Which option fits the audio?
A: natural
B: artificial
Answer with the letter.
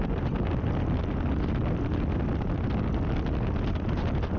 A